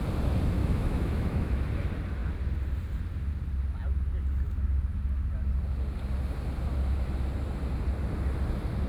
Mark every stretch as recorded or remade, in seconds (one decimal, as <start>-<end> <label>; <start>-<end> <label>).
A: 0.0-0.6 recorded; 0.6-1.6 remade; 1.6-8.9 recorded